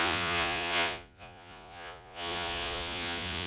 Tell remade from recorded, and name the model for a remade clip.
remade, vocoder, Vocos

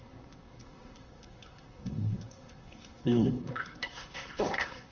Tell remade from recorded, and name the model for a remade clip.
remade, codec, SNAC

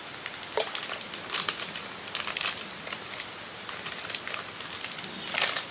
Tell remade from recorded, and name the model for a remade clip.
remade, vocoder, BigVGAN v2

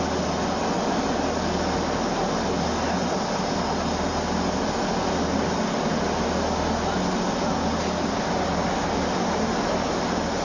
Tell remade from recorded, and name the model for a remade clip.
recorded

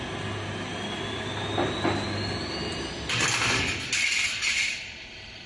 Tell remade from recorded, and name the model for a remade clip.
recorded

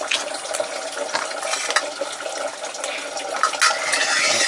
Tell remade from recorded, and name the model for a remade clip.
recorded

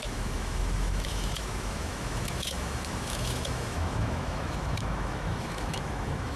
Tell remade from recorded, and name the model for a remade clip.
remade, autoencoder, DAC-VAE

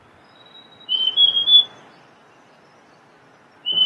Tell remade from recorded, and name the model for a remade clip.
recorded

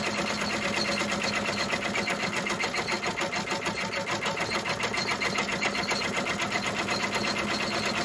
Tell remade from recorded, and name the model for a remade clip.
recorded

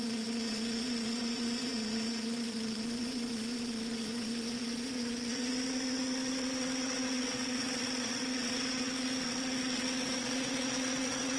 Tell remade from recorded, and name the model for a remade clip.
remade, vocoder, Vocos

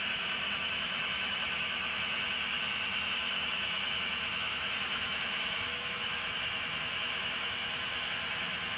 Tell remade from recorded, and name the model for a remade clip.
remade, autoencoder, DAC-VAE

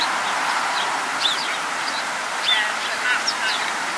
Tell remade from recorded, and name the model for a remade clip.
recorded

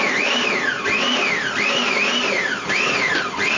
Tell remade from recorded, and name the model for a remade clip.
recorded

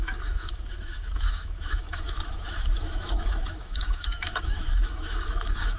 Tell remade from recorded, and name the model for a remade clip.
remade, autoencoder, DAC-VAE